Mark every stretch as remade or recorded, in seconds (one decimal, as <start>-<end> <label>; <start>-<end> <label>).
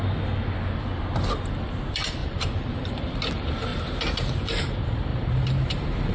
0.0-2.2 recorded; 2.2-3.2 remade; 3.2-3.7 recorded; 3.7-4.6 remade; 4.6-5.1 recorded; 5.1-6.1 remade